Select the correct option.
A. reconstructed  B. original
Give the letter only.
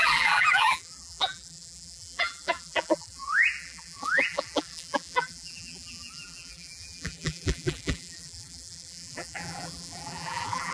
A